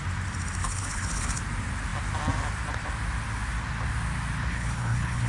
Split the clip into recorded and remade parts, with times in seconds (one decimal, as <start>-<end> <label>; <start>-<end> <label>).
0.0-0.6 recorded; 0.6-1.4 remade; 1.4-4.5 recorded; 4.5-5.3 remade